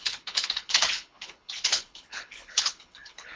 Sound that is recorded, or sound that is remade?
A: remade